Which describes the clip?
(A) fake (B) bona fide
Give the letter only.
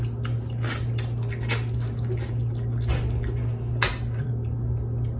B